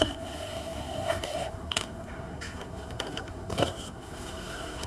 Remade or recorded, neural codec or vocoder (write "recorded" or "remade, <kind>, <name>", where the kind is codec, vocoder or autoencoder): remade, codec, SNAC